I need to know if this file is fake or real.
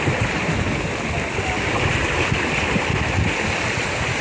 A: real